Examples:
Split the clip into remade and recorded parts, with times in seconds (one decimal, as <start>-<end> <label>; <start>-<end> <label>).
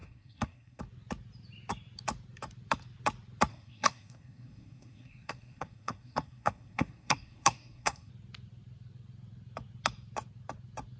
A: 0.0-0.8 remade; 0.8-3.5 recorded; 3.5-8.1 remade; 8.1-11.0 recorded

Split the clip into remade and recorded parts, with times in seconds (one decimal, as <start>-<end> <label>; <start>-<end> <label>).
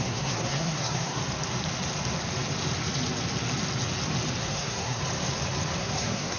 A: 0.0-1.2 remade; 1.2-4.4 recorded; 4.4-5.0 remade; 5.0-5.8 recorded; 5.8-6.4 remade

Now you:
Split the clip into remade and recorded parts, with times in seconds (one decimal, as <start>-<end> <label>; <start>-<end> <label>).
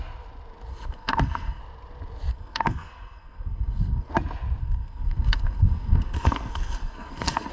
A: 0.0-0.7 recorded; 0.7-1.6 remade; 1.6-2.3 recorded; 2.3-4.1 remade; 4.1-4.6 recorded; 4.6-7.5 remade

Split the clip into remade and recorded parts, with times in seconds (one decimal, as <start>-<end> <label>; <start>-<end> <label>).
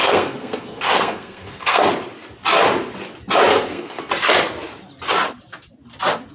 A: 0.0-1.9 remade; 1.9-3.5 recorded; 3.5-4.1 remade; 4.1-6.3 recorded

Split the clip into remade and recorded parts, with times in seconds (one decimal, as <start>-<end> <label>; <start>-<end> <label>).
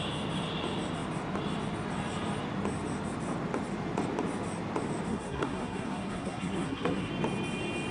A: 0.0-5.1 recorded; 5.1-7.1 remade; 7.1-7.9 recorded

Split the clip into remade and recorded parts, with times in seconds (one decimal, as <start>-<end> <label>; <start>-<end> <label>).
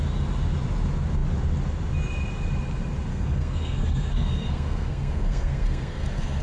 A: 0.0-3.1 recorded; 3.1-6.4 remade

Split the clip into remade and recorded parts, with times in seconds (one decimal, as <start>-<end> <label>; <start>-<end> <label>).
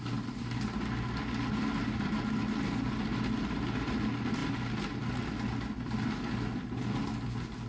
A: 0.0-7.7 recorded